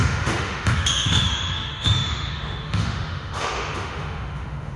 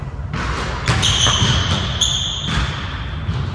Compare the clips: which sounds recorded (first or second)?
second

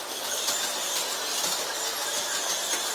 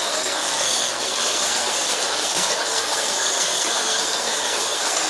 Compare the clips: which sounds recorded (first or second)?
first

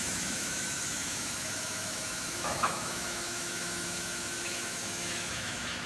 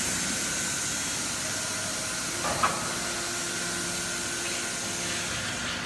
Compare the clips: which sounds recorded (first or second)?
second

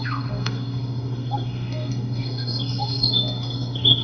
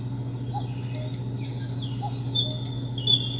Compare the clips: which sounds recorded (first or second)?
second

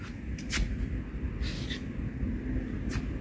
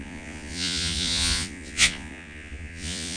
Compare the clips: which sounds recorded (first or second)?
first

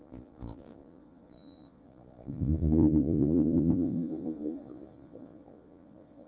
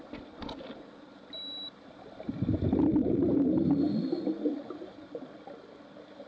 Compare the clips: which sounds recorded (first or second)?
second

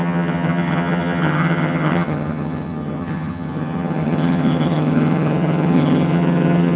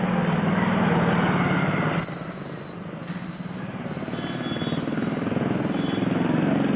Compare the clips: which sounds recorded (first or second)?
second